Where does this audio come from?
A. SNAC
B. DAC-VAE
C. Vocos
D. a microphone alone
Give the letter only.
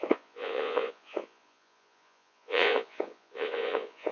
C